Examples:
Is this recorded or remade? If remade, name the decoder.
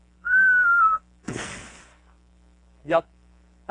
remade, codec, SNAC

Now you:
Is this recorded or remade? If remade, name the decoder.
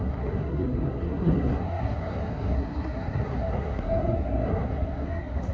remade, codec, SNAC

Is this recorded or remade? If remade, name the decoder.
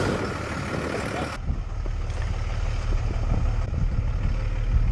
recorded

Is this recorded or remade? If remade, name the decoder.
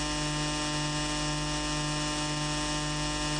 recorded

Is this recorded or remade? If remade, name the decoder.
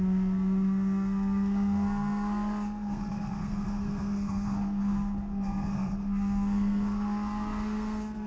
remade, codec, SNAC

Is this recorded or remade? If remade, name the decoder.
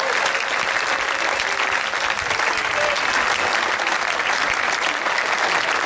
recorded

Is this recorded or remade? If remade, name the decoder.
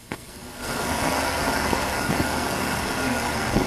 remade, codec, SNAC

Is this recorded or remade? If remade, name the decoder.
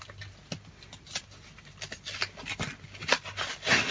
recorded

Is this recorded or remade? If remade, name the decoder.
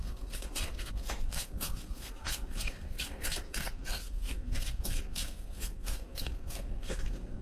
remade, codec, SNAC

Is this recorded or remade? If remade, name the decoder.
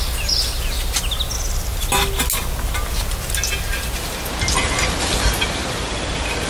recorded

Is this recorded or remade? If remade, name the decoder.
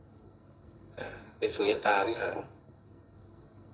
remade, codec, SNAC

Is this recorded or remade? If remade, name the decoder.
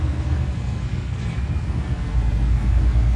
remade, codec, SNAC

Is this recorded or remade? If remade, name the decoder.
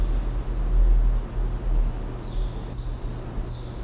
recorded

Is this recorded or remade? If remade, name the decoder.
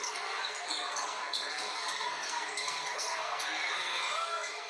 remade, codec, SNAC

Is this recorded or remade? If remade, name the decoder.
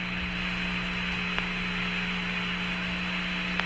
recorded